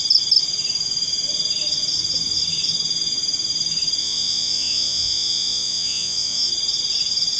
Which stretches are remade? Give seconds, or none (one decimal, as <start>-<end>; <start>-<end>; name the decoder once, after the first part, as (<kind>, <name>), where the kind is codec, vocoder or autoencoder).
4.0-6.5 (vocoder, Vocos)